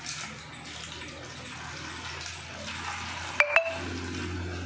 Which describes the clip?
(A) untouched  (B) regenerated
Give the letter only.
A